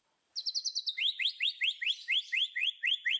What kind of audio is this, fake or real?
real